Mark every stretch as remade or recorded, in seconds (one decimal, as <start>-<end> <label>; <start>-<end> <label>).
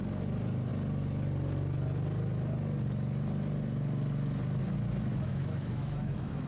0.0-5.3 recorded; 5.3-6.5 remade